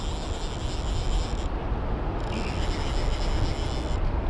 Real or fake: real